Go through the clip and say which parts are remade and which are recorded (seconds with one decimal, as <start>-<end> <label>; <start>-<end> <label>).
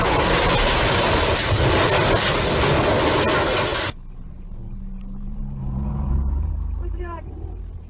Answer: 0.0-5.6 recorded; 5.6-6.5 remade; 6.5-7.9 recorded